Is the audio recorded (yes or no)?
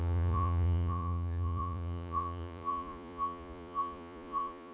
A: no